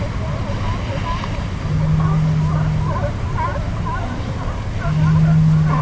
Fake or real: real